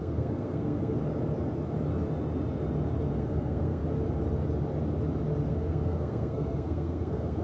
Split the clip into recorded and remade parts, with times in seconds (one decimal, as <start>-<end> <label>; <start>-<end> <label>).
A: 0.0-1.0 remade; 1.0-3.2 recorded; 3.2-3.8 remade; 3.8-5.5 recorded; 5.5-7.4 remade